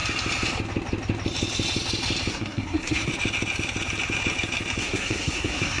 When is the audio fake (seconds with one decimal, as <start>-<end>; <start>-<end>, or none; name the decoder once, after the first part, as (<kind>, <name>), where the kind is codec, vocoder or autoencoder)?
2.3-3.1 (codec, SNAC); 4.8-5.8